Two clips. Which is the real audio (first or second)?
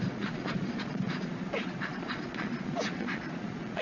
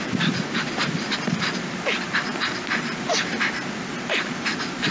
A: second